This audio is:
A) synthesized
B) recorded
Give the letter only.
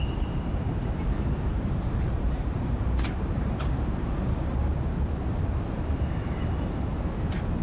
A